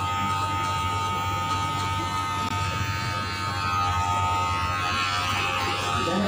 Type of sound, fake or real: fake